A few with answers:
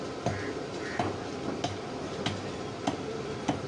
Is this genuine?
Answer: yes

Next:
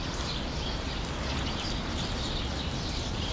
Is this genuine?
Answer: yes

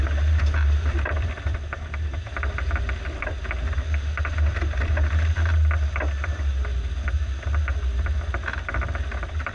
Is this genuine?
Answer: yes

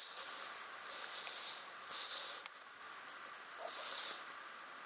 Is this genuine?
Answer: yes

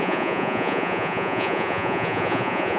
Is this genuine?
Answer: no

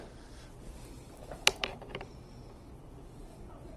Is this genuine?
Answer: no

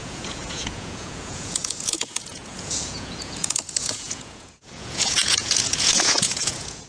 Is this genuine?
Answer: no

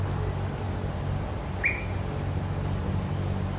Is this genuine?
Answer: yes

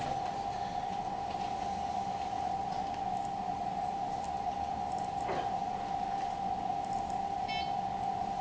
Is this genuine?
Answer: yes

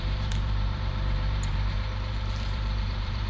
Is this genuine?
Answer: no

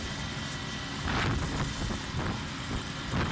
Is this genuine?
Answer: yes